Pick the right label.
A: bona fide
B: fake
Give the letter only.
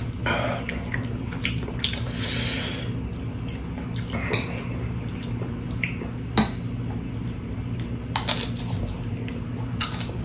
A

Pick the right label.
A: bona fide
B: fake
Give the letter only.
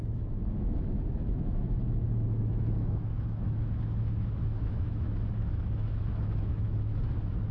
B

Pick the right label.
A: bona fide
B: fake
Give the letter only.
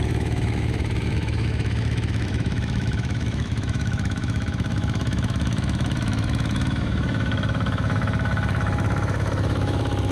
B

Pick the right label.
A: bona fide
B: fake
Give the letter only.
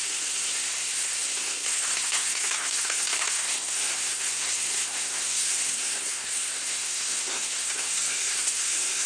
B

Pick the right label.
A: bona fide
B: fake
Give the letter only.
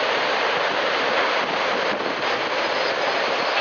A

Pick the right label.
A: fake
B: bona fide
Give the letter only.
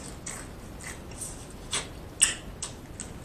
B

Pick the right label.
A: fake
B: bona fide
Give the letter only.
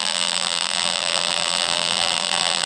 A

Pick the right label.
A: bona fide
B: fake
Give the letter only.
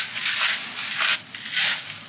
A